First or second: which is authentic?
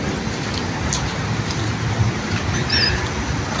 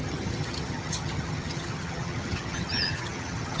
first